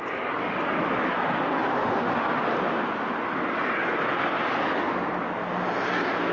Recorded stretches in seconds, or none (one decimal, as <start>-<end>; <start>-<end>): 0.0-6.3